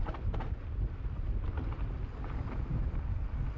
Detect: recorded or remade recorded